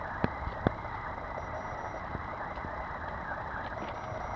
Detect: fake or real real